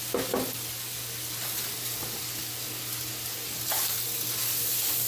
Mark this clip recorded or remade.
recorded